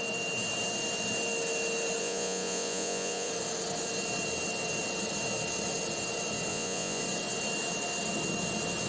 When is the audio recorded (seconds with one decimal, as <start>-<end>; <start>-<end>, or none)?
0.0-2.0; 3.3-6.5; 7.0-8.9